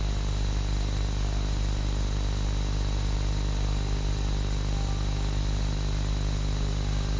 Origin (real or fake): real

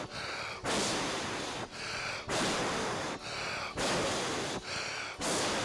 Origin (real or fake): real